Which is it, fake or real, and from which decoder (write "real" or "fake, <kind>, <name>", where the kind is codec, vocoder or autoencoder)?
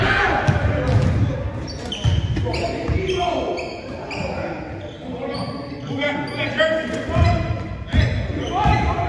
real